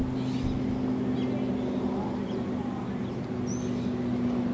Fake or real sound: real